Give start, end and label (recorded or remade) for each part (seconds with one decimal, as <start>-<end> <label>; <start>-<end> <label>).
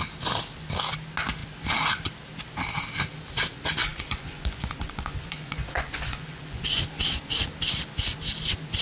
0.0-3.8 recorded; 3.8-6.8 remade; 6.8-8.8 recorded